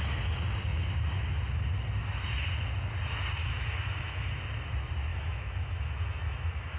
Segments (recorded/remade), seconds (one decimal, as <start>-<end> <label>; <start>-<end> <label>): 0.0-3.4 recorded; 3.4-4.3 remade; 4.3-5.1 recorded; 5.1-6.8 remade

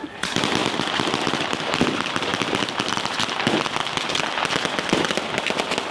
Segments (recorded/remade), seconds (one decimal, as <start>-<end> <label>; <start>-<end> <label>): 0.0-5.9 recorded

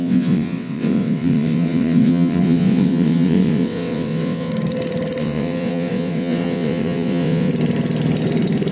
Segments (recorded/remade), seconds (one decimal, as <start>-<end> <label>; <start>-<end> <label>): 0.0-4.5 remade; 4.5-5.2 recorded; 5.2-7.5 remade; 7.5-8.7 recorded

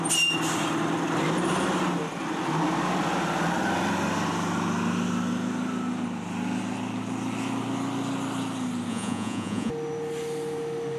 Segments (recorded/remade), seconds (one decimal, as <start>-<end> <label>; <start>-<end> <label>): 0.0-8.9 recorded; 8.9-9.7 remade; 9.7-11.0 recorded

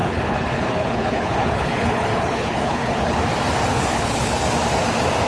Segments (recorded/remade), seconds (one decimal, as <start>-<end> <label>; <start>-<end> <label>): 0.0-3.2 remade; 3.2-3.7 recorded; 3.7-4.4 remade; 4.4-5.3 recorded

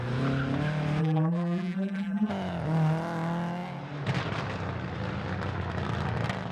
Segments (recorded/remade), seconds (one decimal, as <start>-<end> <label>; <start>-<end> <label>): 0.0-1.0 recorded; 1.0-2.3 remade; 2.3-6.5 recorded